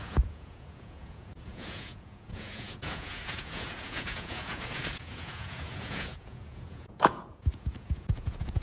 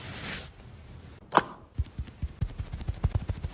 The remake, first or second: first